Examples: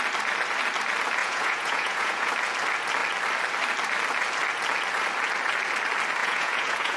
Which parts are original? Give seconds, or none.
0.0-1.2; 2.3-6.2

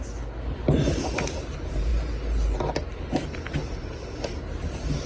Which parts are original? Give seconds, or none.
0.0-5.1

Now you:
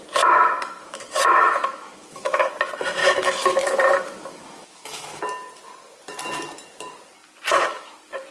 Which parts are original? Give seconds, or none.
0.0-0.8; 2.5-3.0; 5.2-8.3